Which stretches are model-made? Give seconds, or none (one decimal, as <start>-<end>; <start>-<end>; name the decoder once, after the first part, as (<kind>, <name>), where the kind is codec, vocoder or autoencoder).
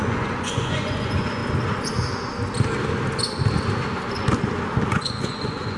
0.0-1.4 (vocoder, Vocos); 4.9-5.8